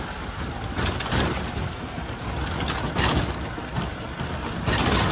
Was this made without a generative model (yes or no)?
yes